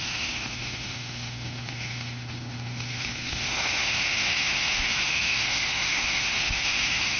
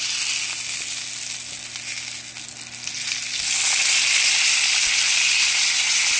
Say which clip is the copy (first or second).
first